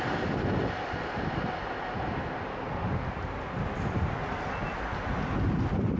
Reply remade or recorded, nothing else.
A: recorded